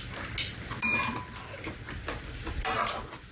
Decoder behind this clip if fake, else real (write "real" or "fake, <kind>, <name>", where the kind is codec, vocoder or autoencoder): real